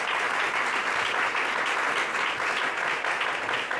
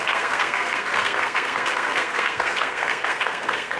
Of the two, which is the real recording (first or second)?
first